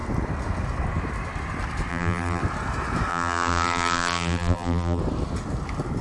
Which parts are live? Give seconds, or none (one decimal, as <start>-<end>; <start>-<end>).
0.0-1.9; 2.4-3.1; 5.0-6.0